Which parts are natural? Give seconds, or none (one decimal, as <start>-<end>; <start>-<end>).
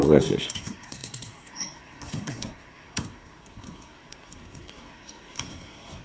none